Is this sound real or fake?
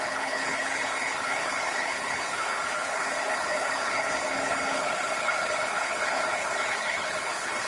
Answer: fake